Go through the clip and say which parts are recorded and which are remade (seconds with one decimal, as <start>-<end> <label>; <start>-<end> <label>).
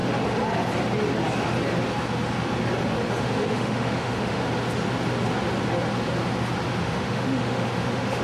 0.0-3.2 recorded; 3.2-4.4 remade; 4.4-6.8 recorded; 6.8-8.2 remade